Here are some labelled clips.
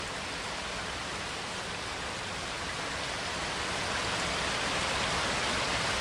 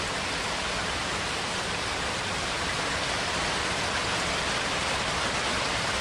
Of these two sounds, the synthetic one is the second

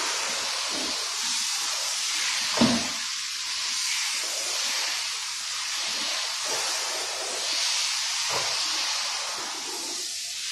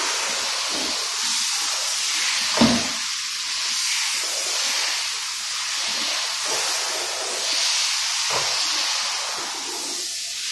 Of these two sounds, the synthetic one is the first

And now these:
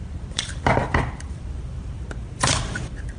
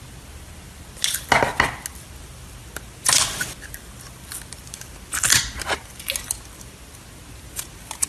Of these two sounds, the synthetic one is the first